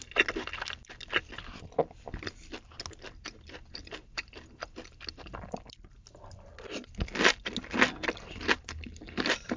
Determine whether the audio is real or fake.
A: real